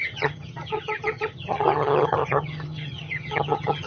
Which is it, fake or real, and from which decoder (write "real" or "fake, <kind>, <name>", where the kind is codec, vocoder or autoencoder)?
fake, vocoder, HiFi-GAN